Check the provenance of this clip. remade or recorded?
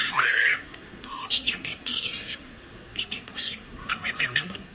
remade